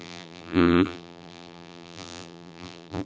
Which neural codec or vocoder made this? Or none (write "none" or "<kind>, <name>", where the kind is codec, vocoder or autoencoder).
vocoder, BigVGAN v2